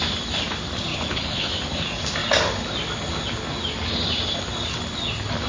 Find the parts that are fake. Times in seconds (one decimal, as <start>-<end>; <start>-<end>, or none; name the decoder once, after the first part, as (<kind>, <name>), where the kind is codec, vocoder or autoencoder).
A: 0.9-1.5 (codec, HILCodec)